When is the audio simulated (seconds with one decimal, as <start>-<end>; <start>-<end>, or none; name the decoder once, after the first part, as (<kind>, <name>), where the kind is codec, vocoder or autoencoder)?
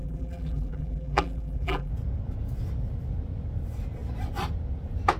0.0-1.9 (vocoder, BigVGAN v2)